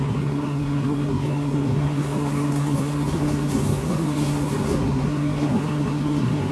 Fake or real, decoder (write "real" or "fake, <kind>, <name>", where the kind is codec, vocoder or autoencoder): fake, codec, SNAC